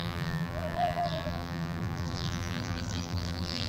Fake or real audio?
fake